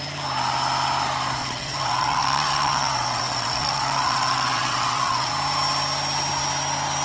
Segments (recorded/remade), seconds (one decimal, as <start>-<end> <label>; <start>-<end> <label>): 0.0-1.4 recorded; 1.4-5.3 remade; 5.3-7.0 recorded